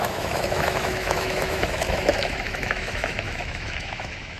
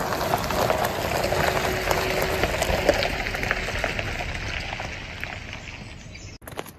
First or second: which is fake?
first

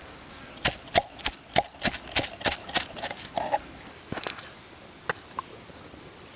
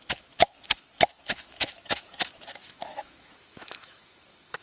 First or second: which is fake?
second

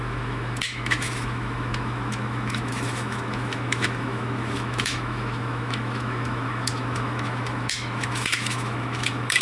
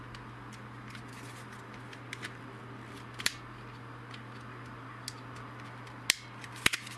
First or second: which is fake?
first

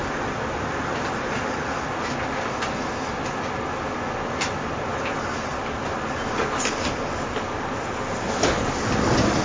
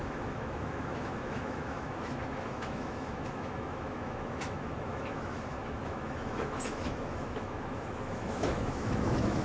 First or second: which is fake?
second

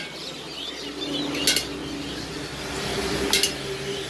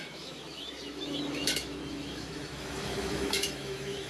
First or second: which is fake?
second